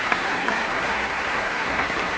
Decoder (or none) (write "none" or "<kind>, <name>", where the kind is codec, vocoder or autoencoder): codec, SNAC